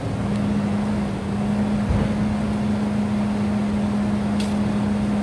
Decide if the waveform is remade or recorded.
recorded